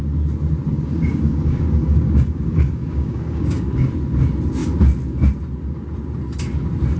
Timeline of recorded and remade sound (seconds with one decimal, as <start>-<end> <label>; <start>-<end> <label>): 0.0-0.7 recorded; 0.7-3.9 remade; 3.9-7.0 recorded